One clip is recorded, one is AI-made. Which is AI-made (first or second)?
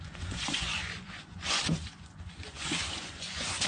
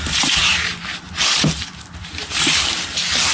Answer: first